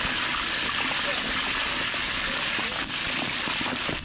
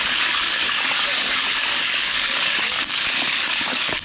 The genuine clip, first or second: first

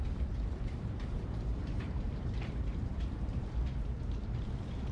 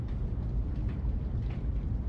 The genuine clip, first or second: second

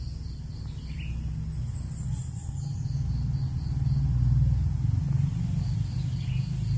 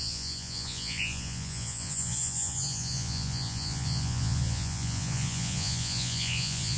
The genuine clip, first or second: first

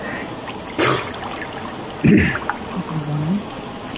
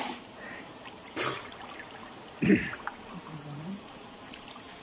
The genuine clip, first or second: first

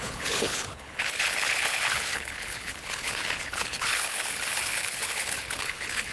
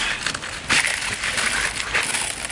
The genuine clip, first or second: second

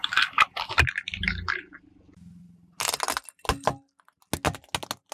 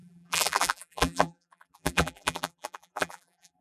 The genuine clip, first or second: first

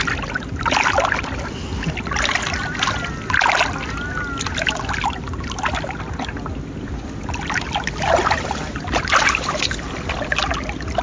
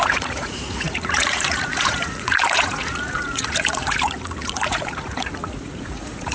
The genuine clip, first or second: first